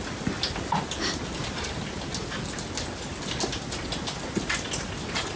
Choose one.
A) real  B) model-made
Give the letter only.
A